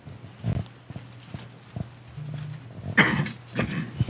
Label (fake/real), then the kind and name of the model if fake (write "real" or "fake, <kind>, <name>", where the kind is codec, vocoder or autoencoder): real